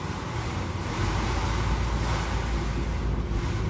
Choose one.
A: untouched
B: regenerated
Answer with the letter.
A